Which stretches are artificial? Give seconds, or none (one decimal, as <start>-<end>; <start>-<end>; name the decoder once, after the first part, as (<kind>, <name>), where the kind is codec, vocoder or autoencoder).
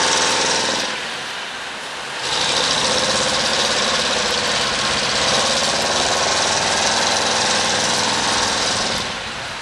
0.0-5.6 (vocoder, BigVGAN v2); 6.3-9.6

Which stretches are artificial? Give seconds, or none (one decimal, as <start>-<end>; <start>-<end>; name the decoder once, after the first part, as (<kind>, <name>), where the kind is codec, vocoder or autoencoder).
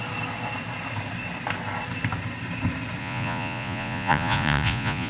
3.0-5.1 (vocoder, Vocos)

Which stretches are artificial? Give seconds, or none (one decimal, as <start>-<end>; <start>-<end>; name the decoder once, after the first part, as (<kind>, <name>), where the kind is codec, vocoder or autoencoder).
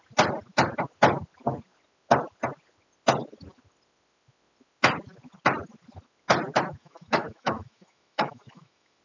6.8-9.0 (autoencoder, DAC-VAE)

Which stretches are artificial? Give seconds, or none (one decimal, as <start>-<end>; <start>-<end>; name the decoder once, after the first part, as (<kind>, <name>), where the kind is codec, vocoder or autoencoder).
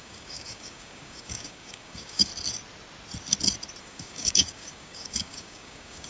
0.0-2.3 (codec, DAC); 3.8-6.1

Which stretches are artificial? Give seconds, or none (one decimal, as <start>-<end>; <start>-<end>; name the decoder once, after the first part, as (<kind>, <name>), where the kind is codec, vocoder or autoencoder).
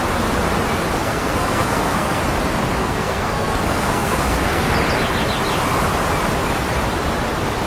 1.0-2.2 (codec, SNAC); 2.8-4.7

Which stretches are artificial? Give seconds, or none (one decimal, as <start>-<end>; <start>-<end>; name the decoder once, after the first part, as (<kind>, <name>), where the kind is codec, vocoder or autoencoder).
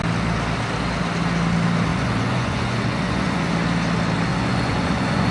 1.9-3.5 (vocoder, Vocos); 4.3-5.3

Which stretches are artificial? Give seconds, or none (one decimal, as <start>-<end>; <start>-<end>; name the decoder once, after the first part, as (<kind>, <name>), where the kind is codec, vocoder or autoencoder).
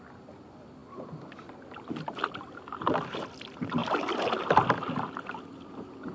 none